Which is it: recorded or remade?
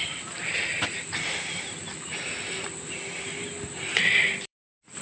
remade